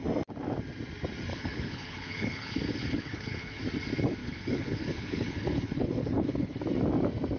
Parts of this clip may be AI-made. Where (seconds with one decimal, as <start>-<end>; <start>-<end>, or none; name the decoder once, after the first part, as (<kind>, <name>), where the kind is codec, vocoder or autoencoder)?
1.3-3.6 (codec, HILCodec); 4.2-6.6